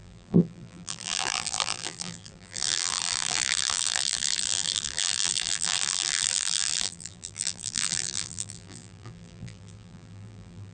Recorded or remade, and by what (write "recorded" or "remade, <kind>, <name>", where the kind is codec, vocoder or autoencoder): remade, vocoder, BigVGAN v2